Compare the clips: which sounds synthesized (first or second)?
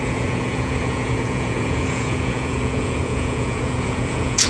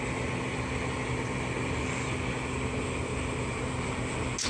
first